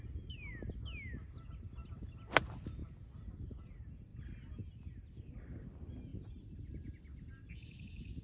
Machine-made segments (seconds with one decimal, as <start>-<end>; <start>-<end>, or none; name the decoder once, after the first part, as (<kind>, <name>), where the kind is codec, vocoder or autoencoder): none